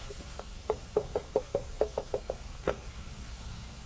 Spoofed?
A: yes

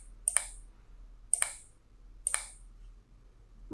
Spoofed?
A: no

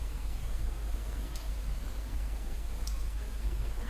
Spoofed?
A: yes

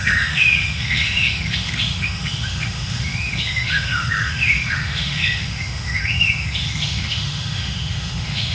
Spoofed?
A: yes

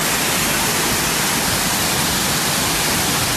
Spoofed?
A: no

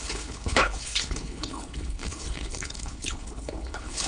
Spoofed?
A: yes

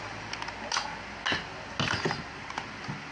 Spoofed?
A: no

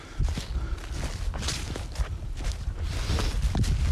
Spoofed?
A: no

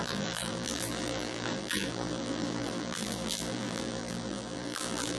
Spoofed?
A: yes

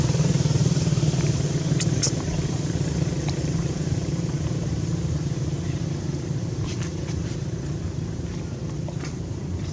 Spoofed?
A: yes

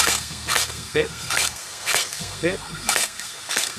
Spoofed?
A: yes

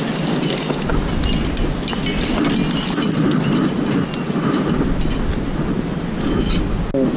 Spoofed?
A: no